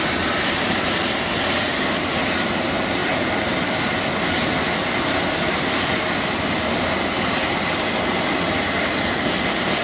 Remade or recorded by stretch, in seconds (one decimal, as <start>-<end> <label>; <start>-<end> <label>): 0.0-9.8 recorded